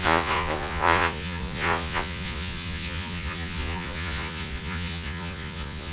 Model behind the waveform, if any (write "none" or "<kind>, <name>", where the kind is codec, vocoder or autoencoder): vocoder, Vocos